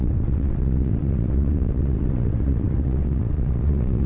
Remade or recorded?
remade